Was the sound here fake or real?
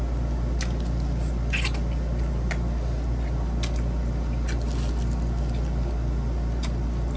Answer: real